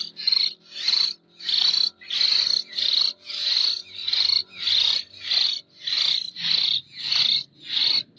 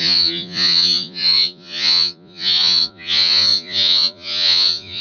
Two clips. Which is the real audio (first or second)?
first